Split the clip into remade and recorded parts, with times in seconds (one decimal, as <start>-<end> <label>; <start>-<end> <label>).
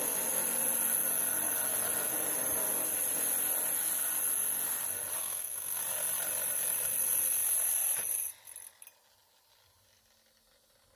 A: 0.0-5.2 recorded; 5.2-5.8 remade; 5.8-11.0 recorded